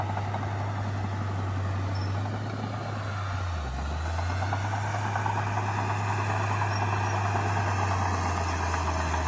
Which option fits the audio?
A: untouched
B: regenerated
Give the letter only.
A